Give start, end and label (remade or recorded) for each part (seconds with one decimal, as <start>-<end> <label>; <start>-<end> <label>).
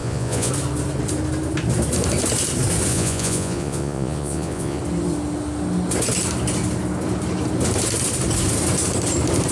0.0-0.5 remade; 0.5-2.9 recorded; 2.9-4.8 remade; 4.8-9.5 recorded